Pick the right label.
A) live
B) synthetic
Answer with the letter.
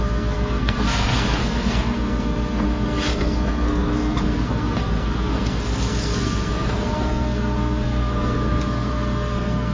B